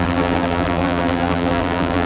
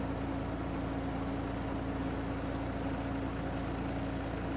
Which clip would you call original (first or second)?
second